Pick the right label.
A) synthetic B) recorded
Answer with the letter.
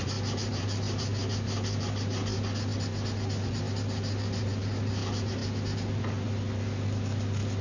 B